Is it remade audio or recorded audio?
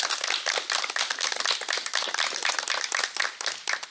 recorded